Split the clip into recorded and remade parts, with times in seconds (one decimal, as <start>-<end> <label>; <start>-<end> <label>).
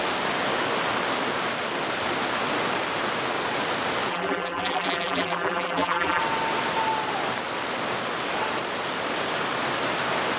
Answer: 0.0-4.1 recorded; 4.1-6.2 remade; 6.2-10.4 recorded